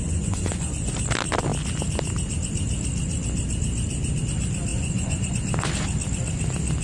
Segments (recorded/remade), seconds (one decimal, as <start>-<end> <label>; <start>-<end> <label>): 0.0-0.9 remade; 0.9-4.7 recorded; 4.7-5.3 remade; 5.3-6.8 recorded